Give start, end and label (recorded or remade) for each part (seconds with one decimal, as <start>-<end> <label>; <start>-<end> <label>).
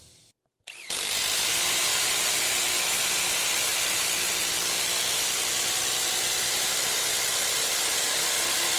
0.0-1.2 remade; 1.2-7.1 recorded; 7.1-7.7 remade; 7.7-8.8 recorded